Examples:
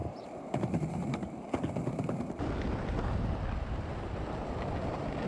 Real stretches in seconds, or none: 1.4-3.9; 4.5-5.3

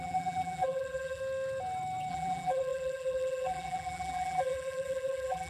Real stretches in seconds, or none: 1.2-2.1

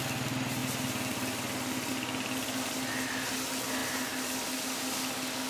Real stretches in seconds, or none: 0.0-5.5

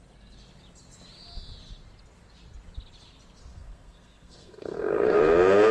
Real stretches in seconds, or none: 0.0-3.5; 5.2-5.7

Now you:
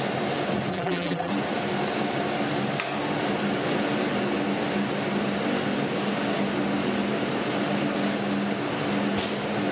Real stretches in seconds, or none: 0.0-0.7; 1.3-9.7

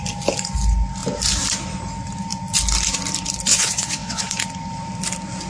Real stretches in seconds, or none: 0.0-3.5; 4.2-5.5

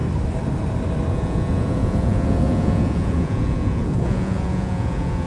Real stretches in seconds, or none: 0.0-1.1